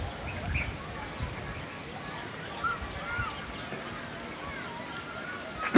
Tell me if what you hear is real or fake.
real